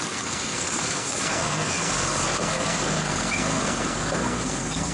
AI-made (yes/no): yes